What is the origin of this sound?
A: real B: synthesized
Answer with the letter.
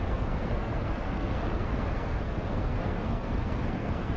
B